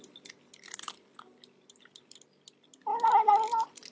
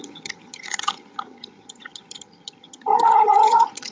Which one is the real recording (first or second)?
first